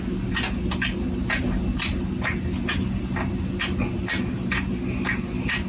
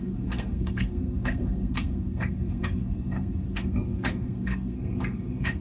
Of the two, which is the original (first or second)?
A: first